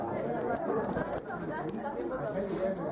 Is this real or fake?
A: real